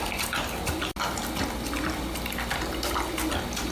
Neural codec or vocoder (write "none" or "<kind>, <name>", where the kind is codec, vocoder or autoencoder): none